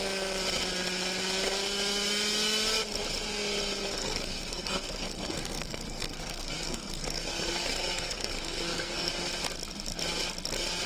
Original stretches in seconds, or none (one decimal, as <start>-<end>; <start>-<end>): 0.0-4.0; 9.1-10.9